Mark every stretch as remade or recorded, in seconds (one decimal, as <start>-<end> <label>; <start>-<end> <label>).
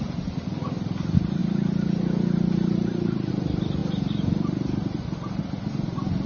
0.0-6.3 recorded